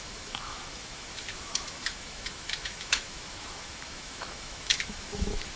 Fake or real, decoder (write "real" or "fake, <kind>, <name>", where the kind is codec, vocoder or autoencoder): fake, autoencoder, DAC-VAE